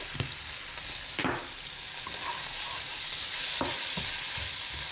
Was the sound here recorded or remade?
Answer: recorded